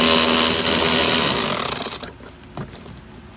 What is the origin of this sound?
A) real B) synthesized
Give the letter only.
A